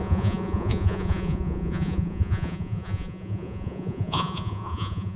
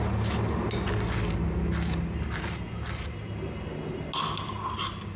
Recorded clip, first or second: second